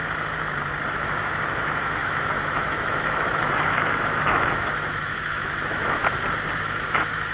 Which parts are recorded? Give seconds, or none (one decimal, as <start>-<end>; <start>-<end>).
0.0-0.9; 6.0-6.6